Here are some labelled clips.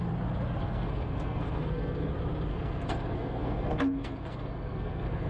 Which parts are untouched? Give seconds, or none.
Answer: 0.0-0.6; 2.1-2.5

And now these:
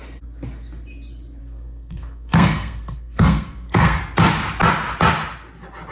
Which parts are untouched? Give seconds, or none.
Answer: 0.0-1.4; 4.0-5.9

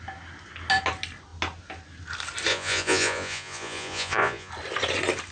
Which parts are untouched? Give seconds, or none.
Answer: 0.0-2.5; 4.5-5.3

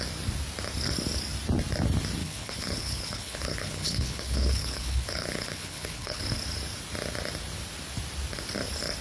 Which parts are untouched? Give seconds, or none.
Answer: 0.0-2.2; 6.2-9.0